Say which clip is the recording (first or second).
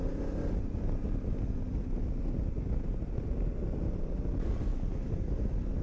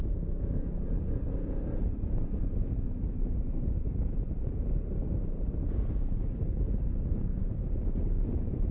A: first